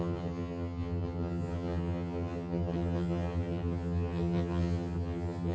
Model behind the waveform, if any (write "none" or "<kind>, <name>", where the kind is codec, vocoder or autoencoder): vocoder, HiFi-GAN